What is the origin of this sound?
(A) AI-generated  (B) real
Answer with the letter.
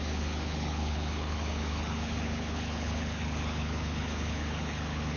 A